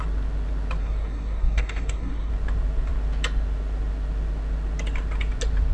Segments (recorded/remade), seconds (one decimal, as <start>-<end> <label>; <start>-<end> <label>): 0.0-0.8 recorded; 0.8-2.3 remade; 2.3-5.7 recorded